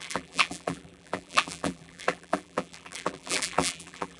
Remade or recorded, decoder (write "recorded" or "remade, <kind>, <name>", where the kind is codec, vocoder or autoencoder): remade, vocoder, BigVGAN v2